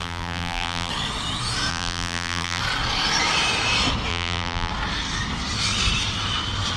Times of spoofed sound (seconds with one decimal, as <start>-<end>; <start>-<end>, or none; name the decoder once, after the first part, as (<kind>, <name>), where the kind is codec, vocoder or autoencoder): 0.0-0.9 (vocoder, BigVGAN v2); 1.7-2.6; 4.1-4.7